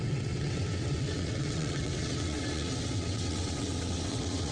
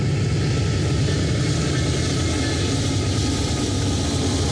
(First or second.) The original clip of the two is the second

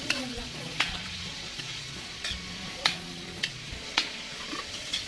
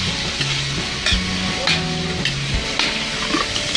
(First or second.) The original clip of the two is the second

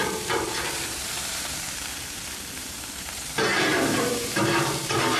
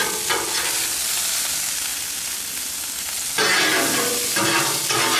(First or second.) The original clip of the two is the second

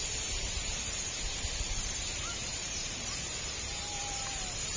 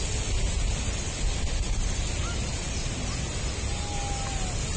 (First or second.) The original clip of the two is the second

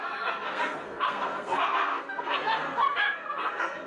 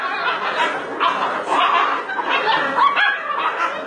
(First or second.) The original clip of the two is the second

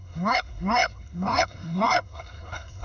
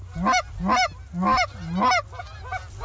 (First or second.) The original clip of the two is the second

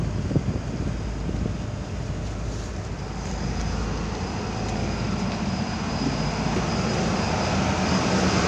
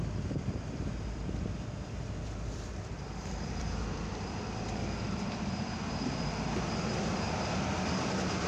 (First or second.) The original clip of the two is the first